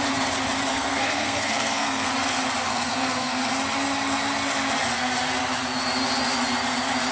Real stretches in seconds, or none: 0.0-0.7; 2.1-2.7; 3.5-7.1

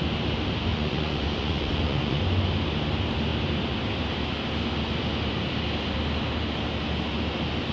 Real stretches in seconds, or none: 0.0-0.7; 2.2-7.7

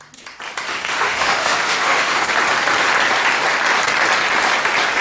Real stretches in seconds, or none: 0.0-0.7; 2.3-5.0